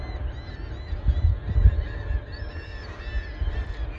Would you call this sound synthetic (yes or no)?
no